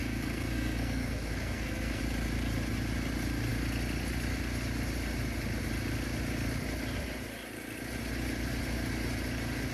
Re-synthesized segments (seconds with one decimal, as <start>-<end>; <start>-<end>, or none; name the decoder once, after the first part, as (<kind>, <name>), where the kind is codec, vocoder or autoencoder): 0.0-2.0 (codec, SNAC)